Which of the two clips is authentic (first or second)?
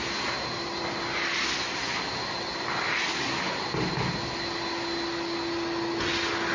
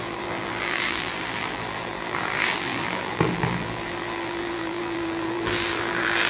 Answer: first